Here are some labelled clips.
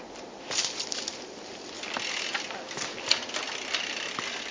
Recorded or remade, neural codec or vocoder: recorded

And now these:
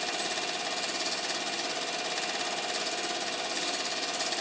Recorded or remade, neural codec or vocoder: recorded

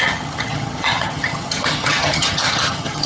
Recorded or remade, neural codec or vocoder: remade, vocoder, HiFi-GAN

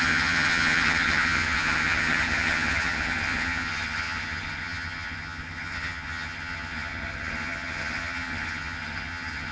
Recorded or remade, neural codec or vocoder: remade, vocoder, HiFi-GAN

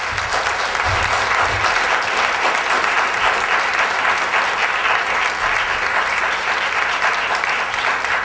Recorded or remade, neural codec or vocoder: recorded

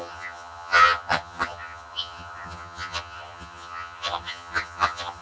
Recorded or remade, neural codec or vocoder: remade, vocoder, HiFi-GAN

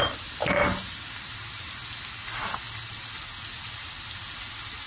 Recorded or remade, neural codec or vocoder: recorded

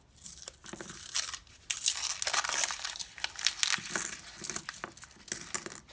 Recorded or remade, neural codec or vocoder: recorded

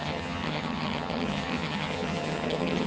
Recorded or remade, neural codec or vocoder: remade, vocoder, HiFi-GAN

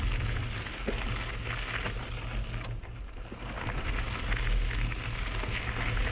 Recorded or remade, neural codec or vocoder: recorded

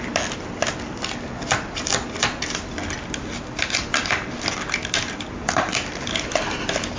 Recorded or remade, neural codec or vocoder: recorded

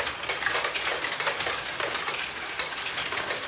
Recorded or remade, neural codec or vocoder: recorded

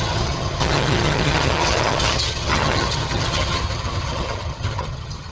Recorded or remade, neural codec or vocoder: remade, vocoder, HiFi-GAN